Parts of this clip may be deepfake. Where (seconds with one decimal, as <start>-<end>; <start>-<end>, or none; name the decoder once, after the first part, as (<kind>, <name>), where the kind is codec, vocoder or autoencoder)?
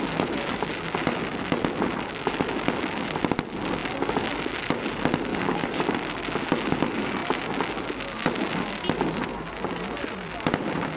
5.3-5.8 (codec, DAC)